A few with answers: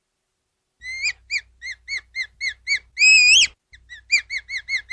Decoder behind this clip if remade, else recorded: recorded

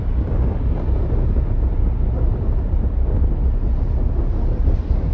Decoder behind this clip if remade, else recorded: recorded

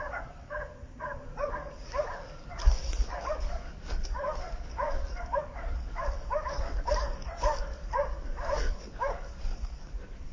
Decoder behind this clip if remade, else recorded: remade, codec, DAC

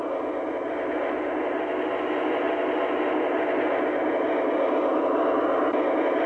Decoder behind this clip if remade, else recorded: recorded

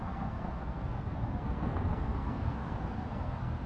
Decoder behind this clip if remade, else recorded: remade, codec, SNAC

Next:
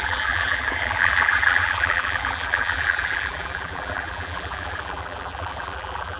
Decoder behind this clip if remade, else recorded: remade, vocoder, BigVGAN v2